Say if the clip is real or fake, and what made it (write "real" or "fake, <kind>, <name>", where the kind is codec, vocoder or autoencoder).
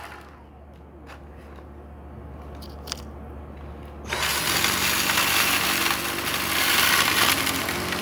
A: real